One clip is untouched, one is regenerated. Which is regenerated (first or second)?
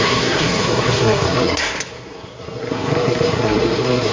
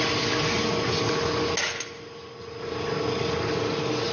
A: first